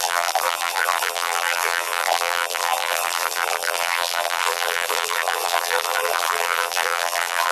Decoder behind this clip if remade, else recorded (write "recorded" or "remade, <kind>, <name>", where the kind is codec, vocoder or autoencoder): remade, vocoder, BigVGAN v2